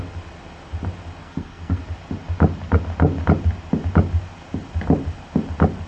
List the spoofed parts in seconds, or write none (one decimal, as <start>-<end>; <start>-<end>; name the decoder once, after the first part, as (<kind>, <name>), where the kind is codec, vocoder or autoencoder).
1.2-1.8 (codec, SNAC)